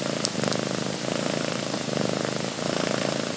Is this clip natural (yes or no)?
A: yes